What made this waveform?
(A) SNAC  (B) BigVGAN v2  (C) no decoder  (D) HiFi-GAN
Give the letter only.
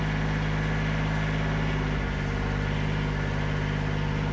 C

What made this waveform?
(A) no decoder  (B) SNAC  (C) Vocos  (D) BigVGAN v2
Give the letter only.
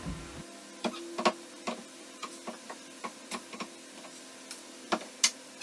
A